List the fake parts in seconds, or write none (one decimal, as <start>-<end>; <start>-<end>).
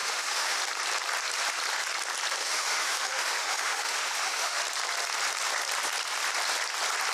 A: 0.0-0.6; 2.4-4.6